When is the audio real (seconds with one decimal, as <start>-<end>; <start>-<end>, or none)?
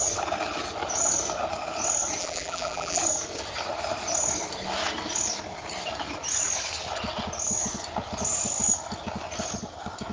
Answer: 0.0-2.2; 3.0-10.1